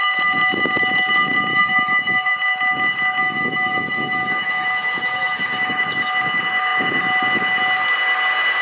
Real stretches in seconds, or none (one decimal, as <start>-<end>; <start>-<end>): 0.0-1.5; 2.3-3.2; 5.8-8.6